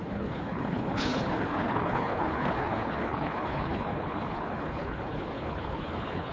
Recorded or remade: remade